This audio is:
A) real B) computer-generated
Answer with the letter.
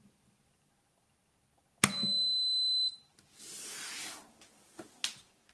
A